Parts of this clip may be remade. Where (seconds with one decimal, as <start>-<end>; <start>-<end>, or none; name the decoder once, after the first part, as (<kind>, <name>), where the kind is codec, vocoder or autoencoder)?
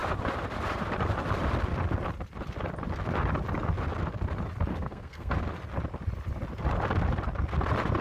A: 4.7-5.3 (codec, SNAC)